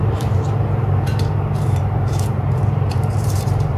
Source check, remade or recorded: remade